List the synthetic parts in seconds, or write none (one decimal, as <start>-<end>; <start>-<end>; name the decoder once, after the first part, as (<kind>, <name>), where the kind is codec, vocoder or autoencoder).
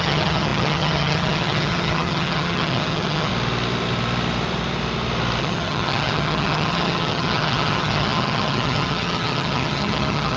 0.0-3.3 (vocoder, HiFi-GAN); 5.4-10.4